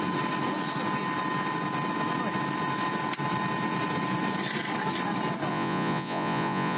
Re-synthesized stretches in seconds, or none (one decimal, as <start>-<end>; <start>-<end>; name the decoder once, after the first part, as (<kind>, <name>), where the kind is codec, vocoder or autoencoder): 5.5-6.8 (vocoder, Vocos)